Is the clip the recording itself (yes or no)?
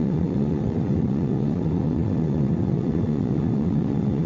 no